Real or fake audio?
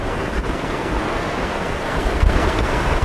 fake